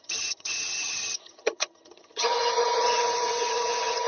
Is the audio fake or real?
fake